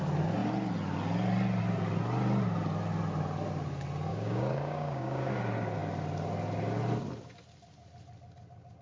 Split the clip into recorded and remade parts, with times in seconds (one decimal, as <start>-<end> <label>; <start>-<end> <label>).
0.0-4.1 recorded; 4.1-5.3 remade; 5.3-8.8 recorded